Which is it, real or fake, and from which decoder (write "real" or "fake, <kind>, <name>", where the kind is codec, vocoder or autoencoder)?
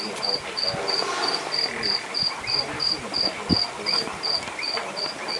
real